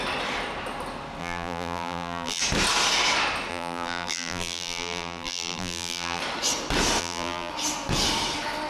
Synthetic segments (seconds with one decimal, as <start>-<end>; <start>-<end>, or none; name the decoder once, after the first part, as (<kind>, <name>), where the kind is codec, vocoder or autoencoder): 1.2-2.4 (vocoder, BigVGAN v2); 3.5-6.2; 7.0-7.5